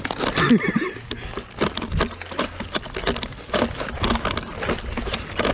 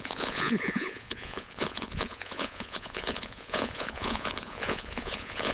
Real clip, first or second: first